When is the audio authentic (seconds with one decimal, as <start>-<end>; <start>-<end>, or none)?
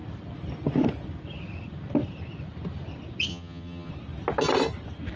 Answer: 0.0-3.3; 3.9-5.2